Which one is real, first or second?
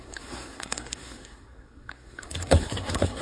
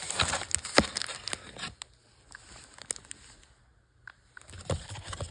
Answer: second